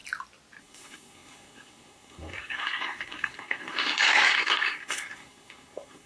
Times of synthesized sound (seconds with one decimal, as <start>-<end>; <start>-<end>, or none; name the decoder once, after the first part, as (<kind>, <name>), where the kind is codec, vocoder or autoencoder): 0.6-6.1 (codec, SNAC)